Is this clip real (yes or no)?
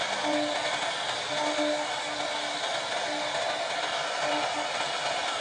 yes